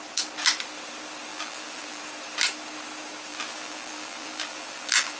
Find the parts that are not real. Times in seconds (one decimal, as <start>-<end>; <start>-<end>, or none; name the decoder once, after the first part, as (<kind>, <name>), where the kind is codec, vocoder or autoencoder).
1.3-2.0 (vocoder, BigVGAN v2); 3.3-5.2